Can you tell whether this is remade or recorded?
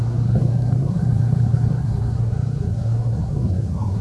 remade